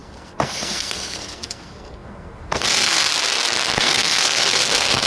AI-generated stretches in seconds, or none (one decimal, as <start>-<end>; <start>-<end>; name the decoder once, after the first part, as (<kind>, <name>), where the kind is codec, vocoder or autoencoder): 0.0-3.1 (codec, SNAC); 3.8-5.1